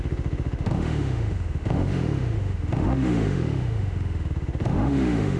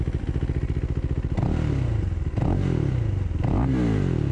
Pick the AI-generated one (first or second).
first